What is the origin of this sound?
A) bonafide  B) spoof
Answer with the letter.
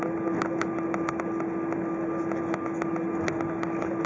A